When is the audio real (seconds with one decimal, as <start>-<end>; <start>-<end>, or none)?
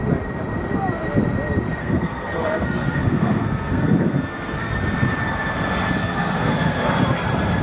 0.0-1.8; 4.7-6.0; 6.9-7.6